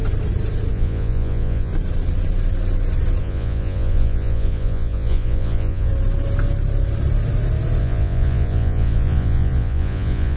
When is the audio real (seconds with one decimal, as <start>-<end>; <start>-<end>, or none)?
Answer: 0.0-0.7; 1.7-3.2; 5.9-7.8